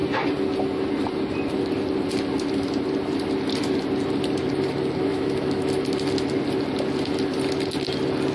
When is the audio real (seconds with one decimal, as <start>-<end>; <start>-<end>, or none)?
0.0-5.1; 5.6-8.3